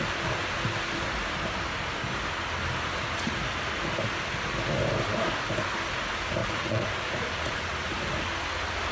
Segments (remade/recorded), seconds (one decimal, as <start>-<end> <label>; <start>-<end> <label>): 0.0-6.4 recorded; 6.4-7.9 remade; 7.9-8.9 recorded